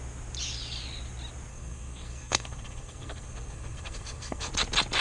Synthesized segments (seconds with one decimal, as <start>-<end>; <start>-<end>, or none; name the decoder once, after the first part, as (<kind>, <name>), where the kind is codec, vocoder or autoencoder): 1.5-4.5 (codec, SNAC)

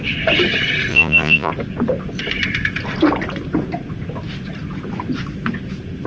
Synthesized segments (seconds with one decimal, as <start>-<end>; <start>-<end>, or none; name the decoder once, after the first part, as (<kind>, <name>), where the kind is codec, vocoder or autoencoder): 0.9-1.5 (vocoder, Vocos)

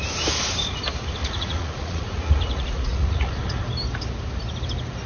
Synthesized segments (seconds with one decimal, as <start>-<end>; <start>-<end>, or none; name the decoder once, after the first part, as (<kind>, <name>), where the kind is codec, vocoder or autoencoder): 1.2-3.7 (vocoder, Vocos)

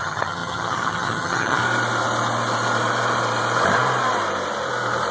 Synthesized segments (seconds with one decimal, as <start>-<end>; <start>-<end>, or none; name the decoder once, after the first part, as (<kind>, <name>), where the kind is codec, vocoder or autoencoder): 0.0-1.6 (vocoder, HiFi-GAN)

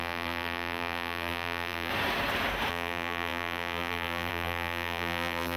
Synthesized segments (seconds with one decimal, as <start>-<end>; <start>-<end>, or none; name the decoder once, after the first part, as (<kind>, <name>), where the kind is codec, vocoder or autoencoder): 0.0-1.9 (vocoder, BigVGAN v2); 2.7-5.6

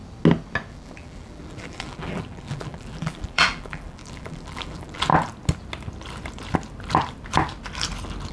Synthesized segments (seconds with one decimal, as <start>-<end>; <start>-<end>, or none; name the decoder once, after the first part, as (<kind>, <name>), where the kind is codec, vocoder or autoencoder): 0.7-5.1 (vocoder, BigVGAN v2)